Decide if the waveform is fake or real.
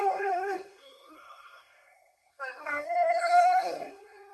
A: fake